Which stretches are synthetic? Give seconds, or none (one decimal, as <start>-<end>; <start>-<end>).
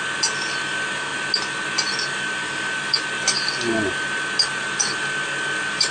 none